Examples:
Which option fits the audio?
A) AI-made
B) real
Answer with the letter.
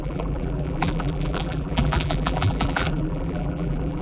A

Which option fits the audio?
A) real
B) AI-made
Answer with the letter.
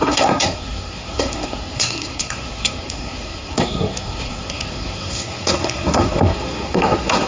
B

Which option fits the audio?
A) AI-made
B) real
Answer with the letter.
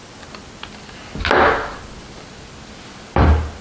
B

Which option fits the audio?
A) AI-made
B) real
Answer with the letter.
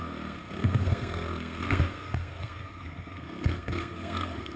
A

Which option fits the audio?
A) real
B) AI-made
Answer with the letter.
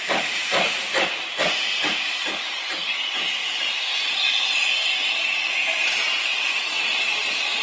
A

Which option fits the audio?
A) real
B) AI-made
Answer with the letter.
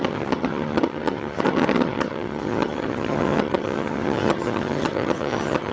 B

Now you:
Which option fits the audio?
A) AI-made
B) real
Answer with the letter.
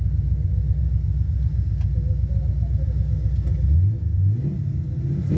B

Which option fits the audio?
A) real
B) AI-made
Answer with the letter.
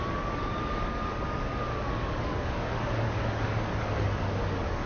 B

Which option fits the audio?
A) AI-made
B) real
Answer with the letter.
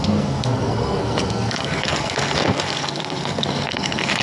A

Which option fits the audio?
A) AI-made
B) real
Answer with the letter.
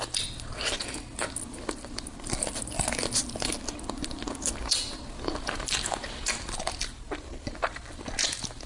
B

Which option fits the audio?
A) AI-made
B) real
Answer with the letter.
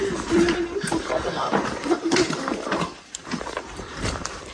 A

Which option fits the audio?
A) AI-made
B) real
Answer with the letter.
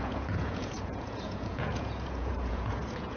A